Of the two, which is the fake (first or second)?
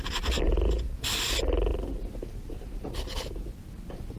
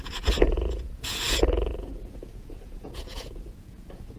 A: second